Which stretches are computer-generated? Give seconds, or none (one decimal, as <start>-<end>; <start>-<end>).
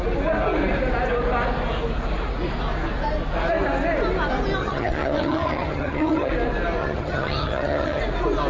4.6-6.3; 6.8-8.0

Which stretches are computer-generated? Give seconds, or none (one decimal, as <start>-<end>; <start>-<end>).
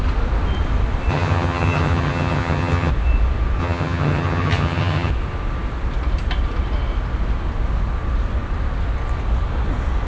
1.1-2.9; 3.6-5.1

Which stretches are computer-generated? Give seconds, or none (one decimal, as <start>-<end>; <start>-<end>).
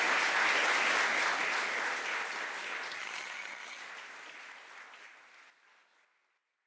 3.0-3.8